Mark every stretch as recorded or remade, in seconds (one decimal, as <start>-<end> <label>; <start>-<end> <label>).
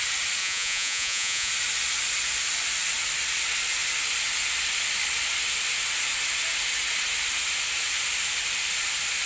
0.0-0.4 recorded; 0.4-1.5 remade; 1.5-9.3 recorded